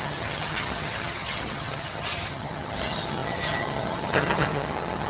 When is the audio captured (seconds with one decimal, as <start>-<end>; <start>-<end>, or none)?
none